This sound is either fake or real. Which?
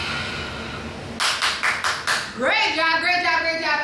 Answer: real